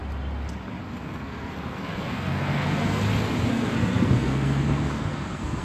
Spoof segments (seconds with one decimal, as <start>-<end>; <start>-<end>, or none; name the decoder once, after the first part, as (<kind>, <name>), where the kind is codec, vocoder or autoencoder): 0.8-3.0 (codec, SNAC); 3.5-5.6